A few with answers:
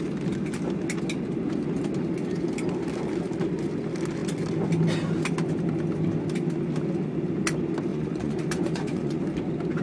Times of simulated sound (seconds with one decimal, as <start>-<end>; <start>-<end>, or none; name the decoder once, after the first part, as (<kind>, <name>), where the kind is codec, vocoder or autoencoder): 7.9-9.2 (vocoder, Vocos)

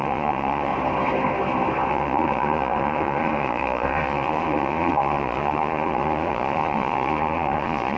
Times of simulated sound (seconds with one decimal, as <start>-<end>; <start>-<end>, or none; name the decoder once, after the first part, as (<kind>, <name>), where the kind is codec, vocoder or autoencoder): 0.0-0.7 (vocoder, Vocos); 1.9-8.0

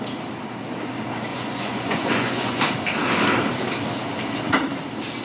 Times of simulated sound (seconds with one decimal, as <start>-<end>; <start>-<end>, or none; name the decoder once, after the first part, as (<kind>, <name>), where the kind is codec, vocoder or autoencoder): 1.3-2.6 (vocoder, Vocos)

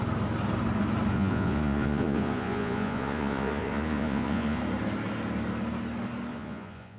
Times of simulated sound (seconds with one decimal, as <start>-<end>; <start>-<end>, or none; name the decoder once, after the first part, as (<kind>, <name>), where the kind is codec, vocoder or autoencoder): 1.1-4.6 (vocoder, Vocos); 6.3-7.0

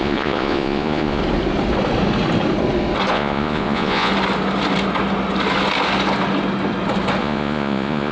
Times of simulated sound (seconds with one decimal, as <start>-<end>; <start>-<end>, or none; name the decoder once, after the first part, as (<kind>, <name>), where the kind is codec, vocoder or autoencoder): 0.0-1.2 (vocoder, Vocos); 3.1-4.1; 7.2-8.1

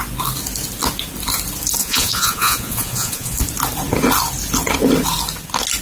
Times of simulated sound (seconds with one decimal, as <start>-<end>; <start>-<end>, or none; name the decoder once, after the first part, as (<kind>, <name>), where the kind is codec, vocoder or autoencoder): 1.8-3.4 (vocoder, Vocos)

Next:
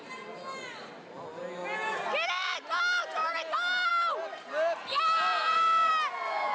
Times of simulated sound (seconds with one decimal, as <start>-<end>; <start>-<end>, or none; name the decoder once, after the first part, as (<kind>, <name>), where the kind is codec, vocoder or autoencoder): 5.3-5.9 (vocoder, Vocos)

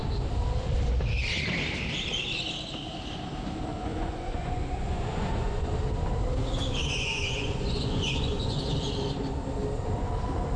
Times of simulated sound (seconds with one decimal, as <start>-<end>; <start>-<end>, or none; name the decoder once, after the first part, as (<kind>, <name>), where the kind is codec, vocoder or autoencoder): 3.7-5.7 (vocoder, Vocos); 6.8-8.6